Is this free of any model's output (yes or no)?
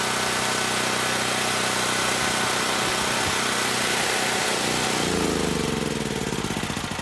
yes